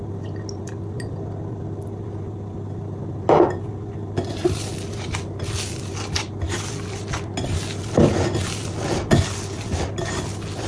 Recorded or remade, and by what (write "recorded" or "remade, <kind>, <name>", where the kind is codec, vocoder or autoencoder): recorded